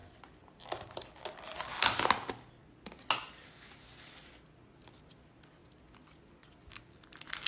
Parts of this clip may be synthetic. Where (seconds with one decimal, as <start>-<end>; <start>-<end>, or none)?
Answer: none